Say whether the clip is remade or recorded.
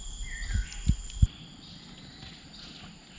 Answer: recorded